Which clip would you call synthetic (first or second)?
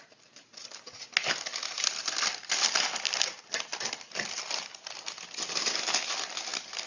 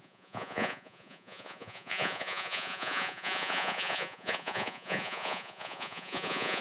second